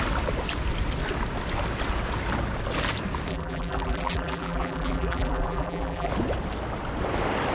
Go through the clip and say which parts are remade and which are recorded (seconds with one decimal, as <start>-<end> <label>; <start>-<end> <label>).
0.0-3.3 recorded; 3.3-6.1 remade; 6.1-7.5 recorded